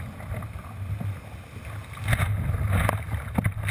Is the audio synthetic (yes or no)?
no